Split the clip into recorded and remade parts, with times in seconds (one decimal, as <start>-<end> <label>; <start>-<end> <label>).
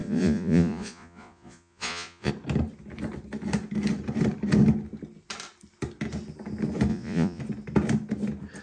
0.0-2.3 remade; 2.3-6.9 recorded; 6.9-7.4 remade; 7.4-8.6 recorded